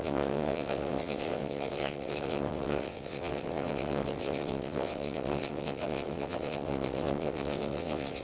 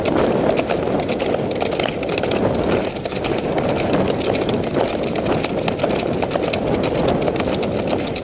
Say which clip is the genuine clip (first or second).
second